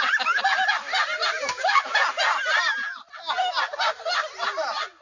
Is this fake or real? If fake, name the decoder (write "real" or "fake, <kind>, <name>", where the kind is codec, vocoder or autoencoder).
real